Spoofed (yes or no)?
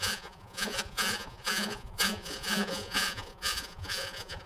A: yes